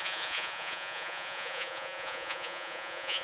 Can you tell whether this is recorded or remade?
remade